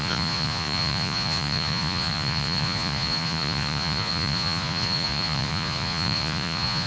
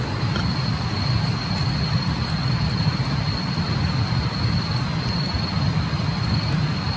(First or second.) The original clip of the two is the second